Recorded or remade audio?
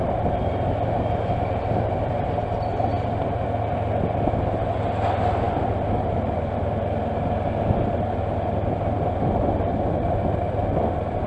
recorded